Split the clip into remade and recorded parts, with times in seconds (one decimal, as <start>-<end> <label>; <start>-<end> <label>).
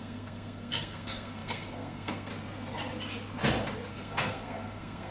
0.0-2.3 remade; 2.3-3.9 recorded; 3.9-5.1 remade